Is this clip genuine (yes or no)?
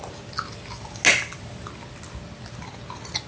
yes